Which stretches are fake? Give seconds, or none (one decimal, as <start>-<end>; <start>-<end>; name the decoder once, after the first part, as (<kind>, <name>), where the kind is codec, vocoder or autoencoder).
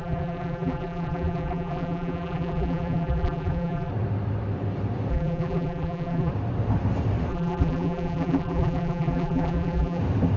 0.0-3.9 (vocoder, BigVGAN v2); 5.1-6.3; 7.3-10.0